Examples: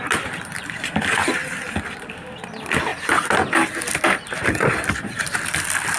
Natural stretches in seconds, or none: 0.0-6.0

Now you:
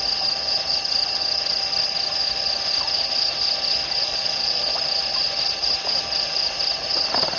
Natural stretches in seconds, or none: 0.0-4.0; 4.6-7.4